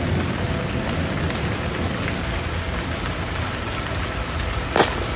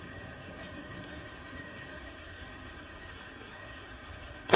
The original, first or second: first